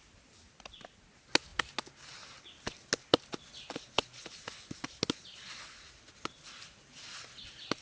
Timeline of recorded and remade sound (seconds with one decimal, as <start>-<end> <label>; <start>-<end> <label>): 0.0-7.8 recorded